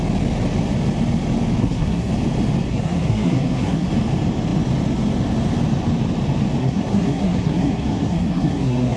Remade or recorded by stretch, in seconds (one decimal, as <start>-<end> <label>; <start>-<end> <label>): 0.0-1.6 recorded; 1.6-2.1 remade; 2.1-2.7 recorded; 2.7-3.9 remade; 3.9-6.6 recorded; 6.6-9.0 remade